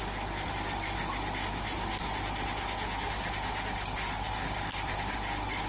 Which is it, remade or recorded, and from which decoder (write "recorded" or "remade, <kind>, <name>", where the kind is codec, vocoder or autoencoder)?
recorded